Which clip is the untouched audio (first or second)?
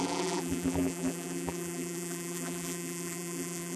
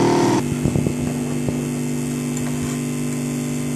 second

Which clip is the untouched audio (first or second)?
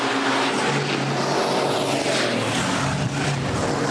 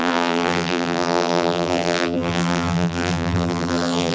first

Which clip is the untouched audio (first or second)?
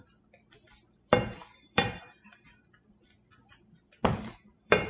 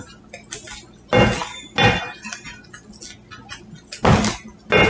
second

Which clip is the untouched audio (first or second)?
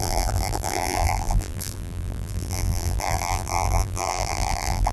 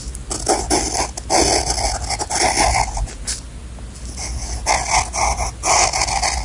second